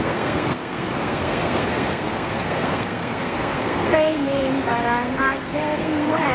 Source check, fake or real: fake